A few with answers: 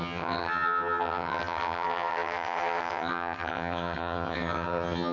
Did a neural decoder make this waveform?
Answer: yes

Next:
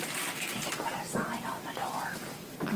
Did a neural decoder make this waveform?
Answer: no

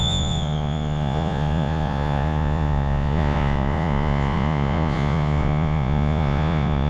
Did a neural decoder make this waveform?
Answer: yes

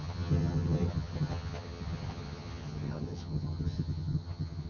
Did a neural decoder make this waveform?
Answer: yes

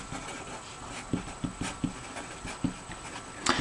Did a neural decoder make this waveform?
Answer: no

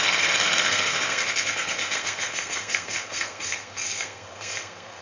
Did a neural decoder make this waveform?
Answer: yes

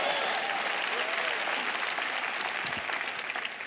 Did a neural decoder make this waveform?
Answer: no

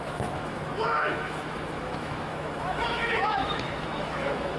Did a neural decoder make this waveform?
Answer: yes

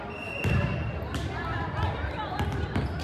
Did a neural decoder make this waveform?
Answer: no